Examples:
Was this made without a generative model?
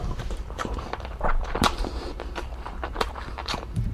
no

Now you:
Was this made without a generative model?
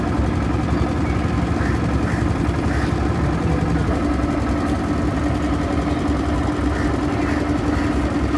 yes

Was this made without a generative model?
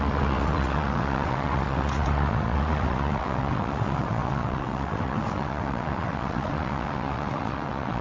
no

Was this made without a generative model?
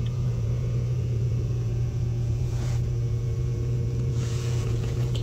no